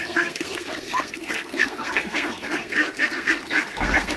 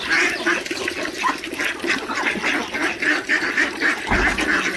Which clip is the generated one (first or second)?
first